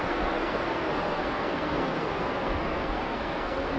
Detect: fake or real fake